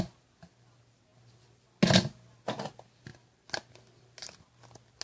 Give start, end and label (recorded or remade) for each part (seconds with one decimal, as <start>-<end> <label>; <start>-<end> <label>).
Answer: 0.0-5.0 recorded